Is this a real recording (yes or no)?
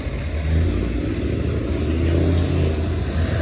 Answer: yes